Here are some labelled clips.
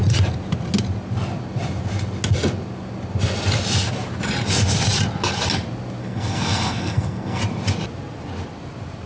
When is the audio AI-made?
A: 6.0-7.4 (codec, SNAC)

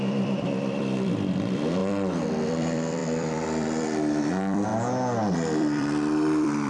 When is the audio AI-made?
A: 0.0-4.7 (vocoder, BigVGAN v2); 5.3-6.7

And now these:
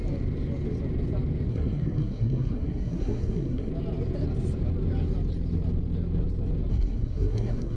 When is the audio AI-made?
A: 1.5-3.7 (codec, SNAC); 6.7-7.8

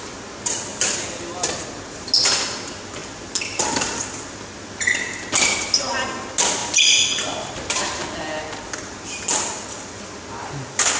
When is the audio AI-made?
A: 0.7-1.6 (vocoder, BigVGAN v2); 3.0-4.7

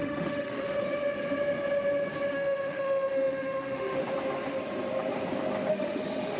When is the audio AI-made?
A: 0.0-0.8 (autoencoder, DAC-VAE); 2.3-4.0; 5.7-6.4

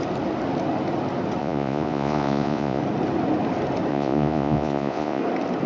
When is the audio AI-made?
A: 1.4-2.8 (vocoder, Vocos); 3.9-5.2

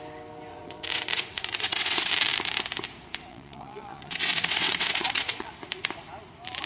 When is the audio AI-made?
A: 0.5-2.1 (vocoder, WaveNeXt); 3.3-5.5